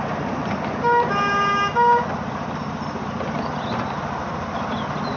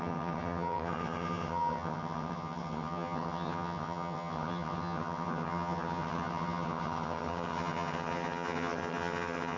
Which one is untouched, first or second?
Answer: first